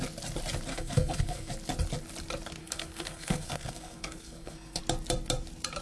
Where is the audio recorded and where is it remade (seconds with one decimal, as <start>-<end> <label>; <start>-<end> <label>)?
0.0-0.7 recorded; 0.7-1.5 remade; 1.5-2.6 recorded; 2.6-4.8 remade; 4.8-5.8 recorded